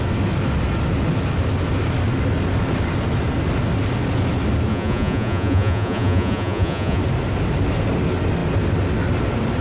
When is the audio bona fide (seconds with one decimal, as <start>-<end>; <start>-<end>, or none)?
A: 0.0-4.7; 7.0-9.6